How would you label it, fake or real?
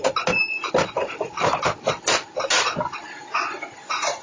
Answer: real